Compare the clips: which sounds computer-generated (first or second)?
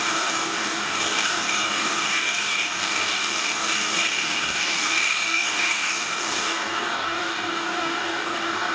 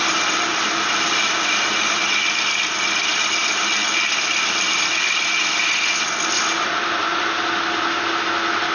first